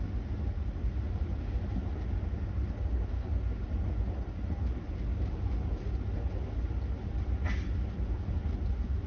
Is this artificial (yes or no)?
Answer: no